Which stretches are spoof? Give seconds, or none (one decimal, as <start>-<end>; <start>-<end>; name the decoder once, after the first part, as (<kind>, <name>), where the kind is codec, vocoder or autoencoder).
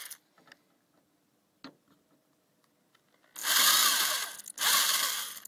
none